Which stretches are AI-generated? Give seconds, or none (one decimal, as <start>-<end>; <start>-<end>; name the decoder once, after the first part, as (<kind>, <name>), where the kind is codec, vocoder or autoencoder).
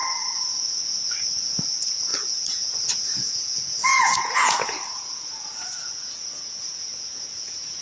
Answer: 0.0-7.8 (vocoder, Vocos)